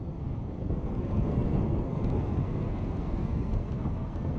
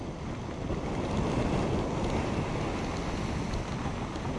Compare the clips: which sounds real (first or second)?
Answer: second